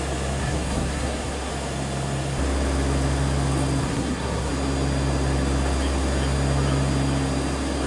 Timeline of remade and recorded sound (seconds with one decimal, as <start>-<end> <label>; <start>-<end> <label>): 0.0-0.4 recorded; 0.4-1.5 remade; 1.5-3.8 recorded; 3.8-4.5 remade; 4.5-7.9 recorded